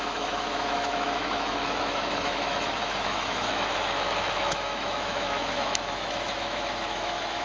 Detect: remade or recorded remade